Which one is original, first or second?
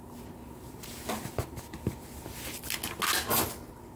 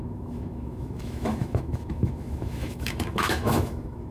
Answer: first